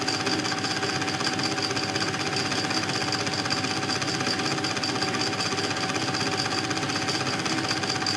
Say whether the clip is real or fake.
real